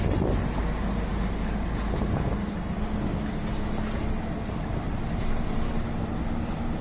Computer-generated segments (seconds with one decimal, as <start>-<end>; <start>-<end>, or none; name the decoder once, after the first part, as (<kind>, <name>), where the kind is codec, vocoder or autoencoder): none